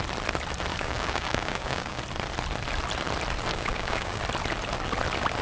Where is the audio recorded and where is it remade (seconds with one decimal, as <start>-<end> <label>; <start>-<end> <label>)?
0.0-0.7 recorded; 0.7-2.0 remade; 2.0-3.5 recorded; 3.5-4.2 remade; 4.2-5.4 recorded